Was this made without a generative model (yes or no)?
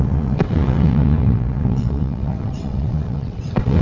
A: no